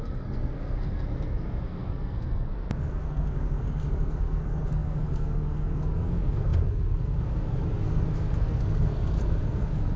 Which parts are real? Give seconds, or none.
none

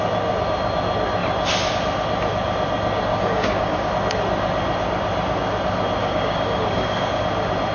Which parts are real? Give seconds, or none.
0.0-3.1; 3.9-6.0; 7.2-7.7

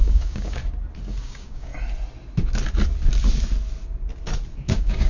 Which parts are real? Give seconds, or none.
0.6-1.2; 1.7-4.6

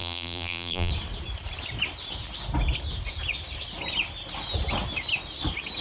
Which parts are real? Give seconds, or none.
0.9-5.8

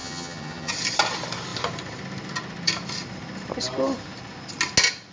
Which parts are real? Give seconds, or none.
0.7-5.1